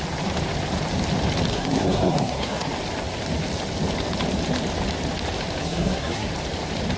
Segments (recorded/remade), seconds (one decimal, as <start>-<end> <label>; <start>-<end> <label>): 0.0-1.5 recorded; 1.5-2.7 remade; 2.7-5.6 recorded; 5.6-6.3 remade; 6.3-7.0 recorded